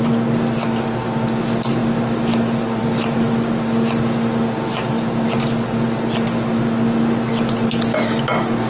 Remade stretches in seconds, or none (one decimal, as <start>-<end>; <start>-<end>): none